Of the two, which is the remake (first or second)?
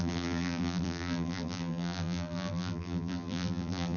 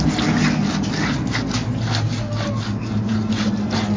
first